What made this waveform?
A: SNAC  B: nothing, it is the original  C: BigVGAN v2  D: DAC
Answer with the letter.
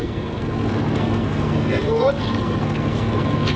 A